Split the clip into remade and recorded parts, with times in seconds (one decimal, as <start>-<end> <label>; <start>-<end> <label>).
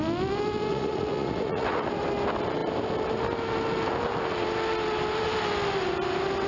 0.0-0.7 recorded; 0.7-1.9 remade; 1.9-6.5 recorded